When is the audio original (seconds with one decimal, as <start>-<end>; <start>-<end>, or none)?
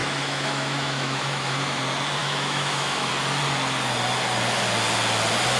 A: 1.8-2.2; 3.1-5.6